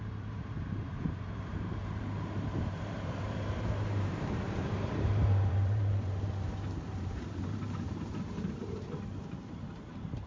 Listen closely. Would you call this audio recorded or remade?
remade